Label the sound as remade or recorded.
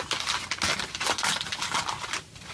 recorded